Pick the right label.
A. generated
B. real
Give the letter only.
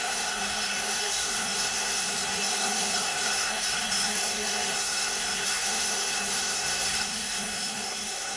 A